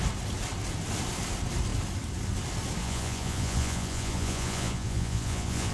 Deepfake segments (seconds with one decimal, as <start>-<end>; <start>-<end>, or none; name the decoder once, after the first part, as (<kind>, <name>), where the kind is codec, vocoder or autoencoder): 2.8-5.7 (vocoder, Vocos)